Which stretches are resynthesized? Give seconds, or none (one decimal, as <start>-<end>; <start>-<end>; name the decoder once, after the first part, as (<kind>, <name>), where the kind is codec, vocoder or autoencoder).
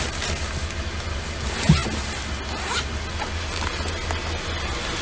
none